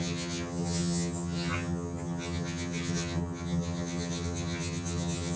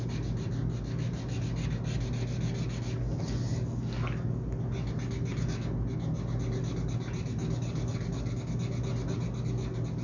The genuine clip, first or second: second